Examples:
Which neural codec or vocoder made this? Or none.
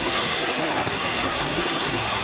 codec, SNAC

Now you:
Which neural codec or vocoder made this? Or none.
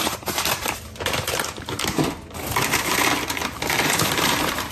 vocoder, BigVGAN v2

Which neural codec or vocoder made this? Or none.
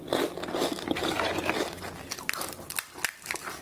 none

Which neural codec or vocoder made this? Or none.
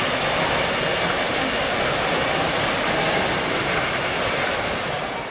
none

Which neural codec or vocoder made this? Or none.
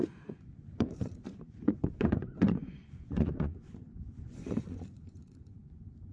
vocoder, Vocos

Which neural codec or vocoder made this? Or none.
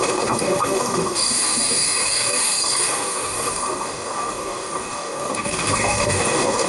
codec, DAC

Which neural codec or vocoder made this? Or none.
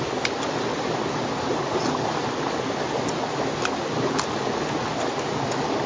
none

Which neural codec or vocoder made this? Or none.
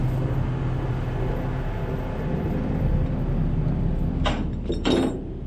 none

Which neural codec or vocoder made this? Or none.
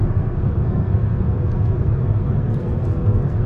codec, SNAC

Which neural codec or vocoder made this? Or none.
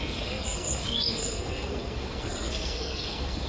codec, SNAC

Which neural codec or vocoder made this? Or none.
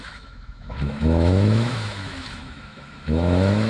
autoencoder, DAC-VAE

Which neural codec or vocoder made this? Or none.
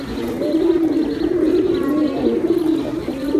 none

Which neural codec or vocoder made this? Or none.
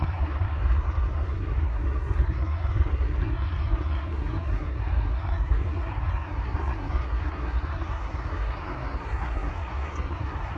codec, SNAC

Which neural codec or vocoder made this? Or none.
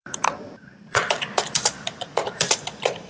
vocoder, BigVGAN v2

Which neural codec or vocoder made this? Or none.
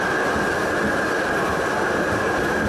none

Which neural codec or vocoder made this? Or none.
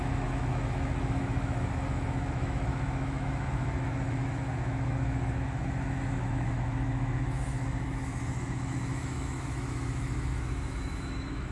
autoencoder, DAC-VAE